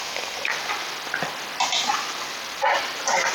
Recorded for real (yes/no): yes